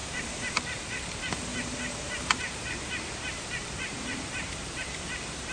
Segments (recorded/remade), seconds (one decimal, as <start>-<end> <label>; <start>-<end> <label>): 0.0-0.6 remade; 0.6-1.5 recorded; 1.5-4.8 remade; 4.8-5.5 recorded